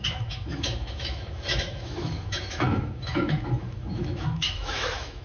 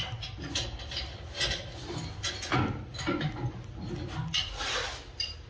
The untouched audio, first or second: second